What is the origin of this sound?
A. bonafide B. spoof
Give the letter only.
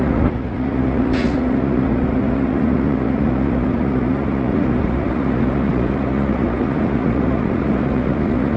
B